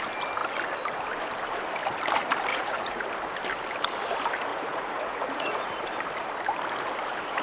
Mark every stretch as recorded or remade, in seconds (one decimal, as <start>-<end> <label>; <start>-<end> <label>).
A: 0.0-2.5 recorded; 2.5-3.1 remade; 3.1-4.5 recorded; 4.5-5.8 remade; 5.8-7.4 recorded